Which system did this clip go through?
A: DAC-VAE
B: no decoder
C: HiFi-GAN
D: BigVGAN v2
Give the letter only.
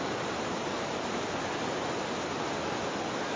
B